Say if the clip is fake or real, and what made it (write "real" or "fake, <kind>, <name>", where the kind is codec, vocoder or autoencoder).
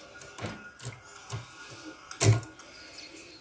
real